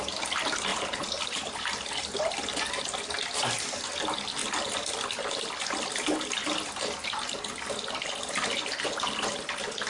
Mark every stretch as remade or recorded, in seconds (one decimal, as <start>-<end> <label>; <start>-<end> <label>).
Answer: 0.0-0.7 recorded; 0.7-2.0 remade; 2.0-9.9 recorded